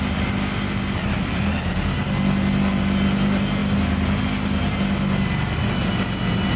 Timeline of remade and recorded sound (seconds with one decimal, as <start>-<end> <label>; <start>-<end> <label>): 0.0-6.6 recorded

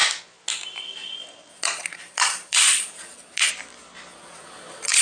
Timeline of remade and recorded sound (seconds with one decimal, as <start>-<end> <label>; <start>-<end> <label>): 0.0-1.5 recorded; 1.5-3.5 remade; 3.5-4.1 recorded; 4.1-5.0 remade

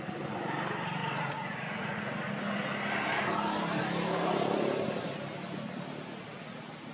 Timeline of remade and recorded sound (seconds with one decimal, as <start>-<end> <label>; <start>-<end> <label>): 0.0-1.0 recorded; 1.0-2.0 remade; 2.0-6.9 recorded

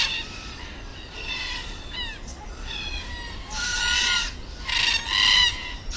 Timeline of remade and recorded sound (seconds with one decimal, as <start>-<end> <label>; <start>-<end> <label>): 0.0-0.9 recorded; 0.9-1.9 remade; 1.9-2.3 recorded; 2.3-3.0 remade; 3.0-6.0 recorded